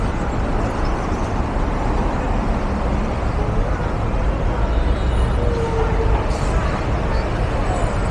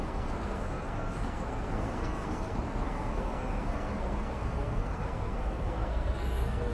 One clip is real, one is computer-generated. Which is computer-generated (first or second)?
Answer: second